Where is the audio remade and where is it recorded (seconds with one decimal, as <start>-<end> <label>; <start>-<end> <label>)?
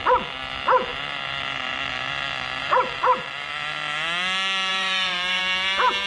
0.0-2.6 recorded; 2.6-3.5 remade; 3.5-4.7 recorded; 4.7-5.4 remade; 5.4-6.1 recorded